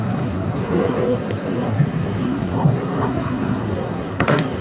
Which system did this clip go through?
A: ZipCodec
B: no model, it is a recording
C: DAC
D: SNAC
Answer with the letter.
D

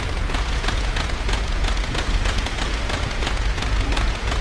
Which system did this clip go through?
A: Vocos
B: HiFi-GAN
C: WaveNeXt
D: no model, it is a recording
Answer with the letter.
A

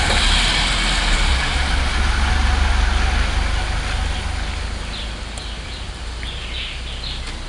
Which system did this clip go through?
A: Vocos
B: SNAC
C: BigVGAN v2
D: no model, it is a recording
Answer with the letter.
D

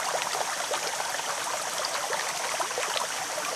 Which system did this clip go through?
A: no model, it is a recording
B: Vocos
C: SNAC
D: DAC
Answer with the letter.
A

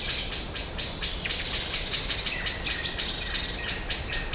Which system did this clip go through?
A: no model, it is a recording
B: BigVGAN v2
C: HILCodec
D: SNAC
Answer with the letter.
A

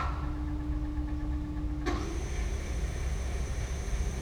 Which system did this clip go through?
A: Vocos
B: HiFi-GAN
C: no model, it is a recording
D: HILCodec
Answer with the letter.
C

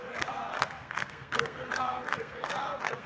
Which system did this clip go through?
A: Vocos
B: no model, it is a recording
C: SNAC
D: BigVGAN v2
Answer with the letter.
C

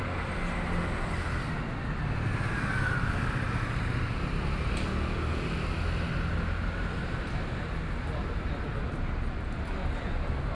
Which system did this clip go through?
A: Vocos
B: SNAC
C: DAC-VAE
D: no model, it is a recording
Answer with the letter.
D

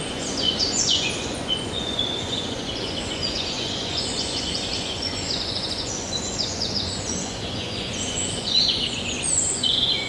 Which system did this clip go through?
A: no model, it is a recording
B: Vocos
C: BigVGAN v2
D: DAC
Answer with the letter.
B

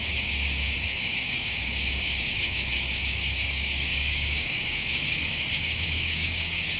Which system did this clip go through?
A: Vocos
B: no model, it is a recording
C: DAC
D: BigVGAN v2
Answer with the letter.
C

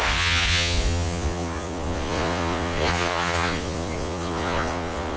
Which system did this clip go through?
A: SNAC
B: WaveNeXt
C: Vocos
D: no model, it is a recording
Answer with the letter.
C